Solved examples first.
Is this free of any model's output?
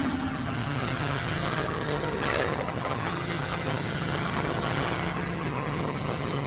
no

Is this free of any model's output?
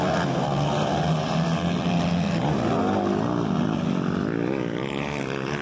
yes